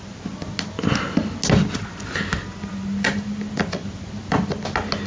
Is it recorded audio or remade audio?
recorded